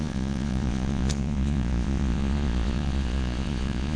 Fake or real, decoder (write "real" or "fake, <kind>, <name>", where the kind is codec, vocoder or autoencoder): fake, vocoder, Vocos